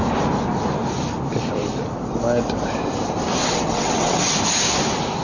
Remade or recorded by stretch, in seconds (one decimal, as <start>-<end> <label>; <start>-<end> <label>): 0.0-3.4 recorded; 3.4-4.2 remade; 4.2-5.2 recorded